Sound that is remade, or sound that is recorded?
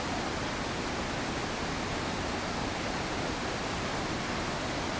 recorded